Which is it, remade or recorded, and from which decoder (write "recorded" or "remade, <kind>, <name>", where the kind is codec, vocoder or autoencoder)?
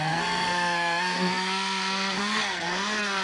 remade, codec, SNAC